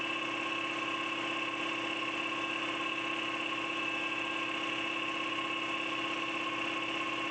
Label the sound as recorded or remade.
recorded